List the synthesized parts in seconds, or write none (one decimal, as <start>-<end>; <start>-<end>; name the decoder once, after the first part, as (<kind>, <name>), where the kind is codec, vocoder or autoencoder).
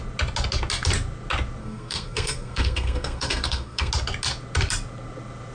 1.6-3.9 (codec, SNAC)